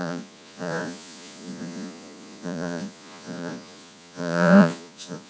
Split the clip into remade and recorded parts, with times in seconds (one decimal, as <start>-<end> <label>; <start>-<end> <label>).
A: 0.0-5.3 remade